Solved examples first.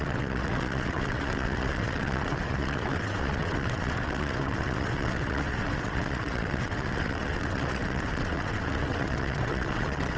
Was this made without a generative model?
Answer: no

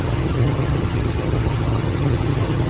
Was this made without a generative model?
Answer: no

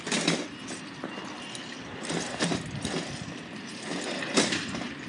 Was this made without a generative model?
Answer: yes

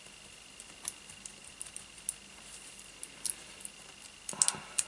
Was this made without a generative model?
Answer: yes